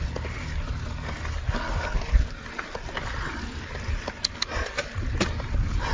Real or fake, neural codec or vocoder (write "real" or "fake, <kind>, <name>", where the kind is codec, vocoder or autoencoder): real